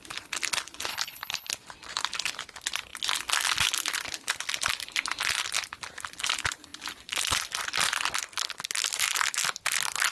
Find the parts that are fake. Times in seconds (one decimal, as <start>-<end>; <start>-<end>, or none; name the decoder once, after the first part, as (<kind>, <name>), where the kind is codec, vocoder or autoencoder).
0.9-1.5 (codec, HILCodec)